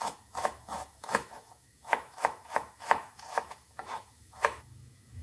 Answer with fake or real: fake